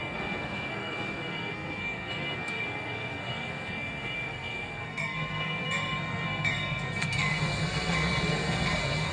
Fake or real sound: fake